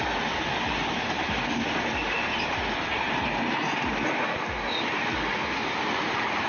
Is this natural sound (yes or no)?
yes